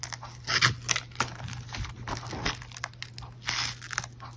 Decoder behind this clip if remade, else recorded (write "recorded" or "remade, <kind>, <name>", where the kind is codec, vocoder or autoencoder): recorded